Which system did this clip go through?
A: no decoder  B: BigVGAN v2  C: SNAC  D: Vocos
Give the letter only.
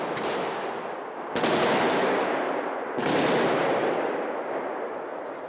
A